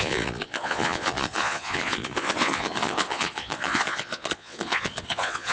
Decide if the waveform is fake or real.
fake